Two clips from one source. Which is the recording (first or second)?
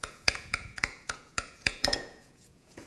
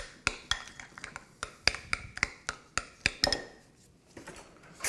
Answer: second